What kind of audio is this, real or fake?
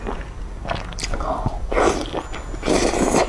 real